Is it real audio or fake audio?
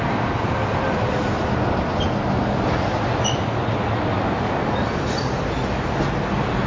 real